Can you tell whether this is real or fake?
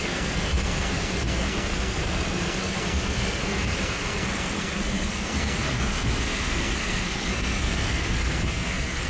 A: fake